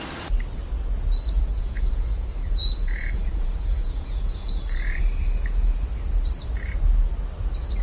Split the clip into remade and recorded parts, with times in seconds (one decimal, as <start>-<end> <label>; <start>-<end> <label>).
0.0-1.5 recorded; 1.5-5.0 remade; 5.0-7.8 recorded